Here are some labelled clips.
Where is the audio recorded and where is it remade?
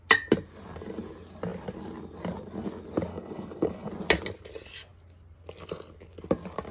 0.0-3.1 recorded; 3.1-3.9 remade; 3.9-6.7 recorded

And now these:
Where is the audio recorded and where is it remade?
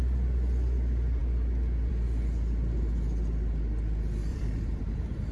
0.0-1.2 recorded; 1.2-1.9 remade; 1.9-4.3 recorded; 4.3-5.3 remade